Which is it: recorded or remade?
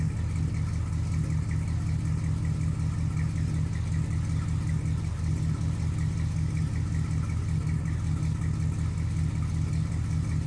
recorded